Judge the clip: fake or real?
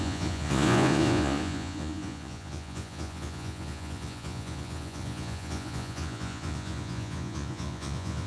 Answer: fake